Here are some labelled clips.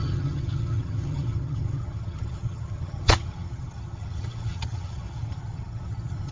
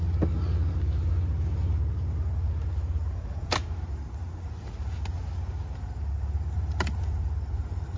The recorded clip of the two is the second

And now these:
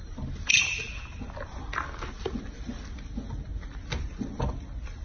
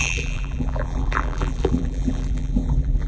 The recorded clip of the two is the first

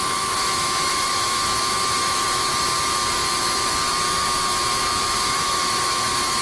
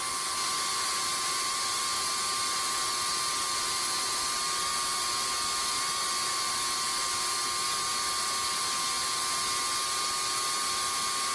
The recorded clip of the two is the second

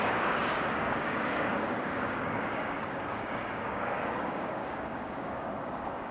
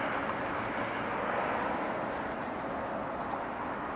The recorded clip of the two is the second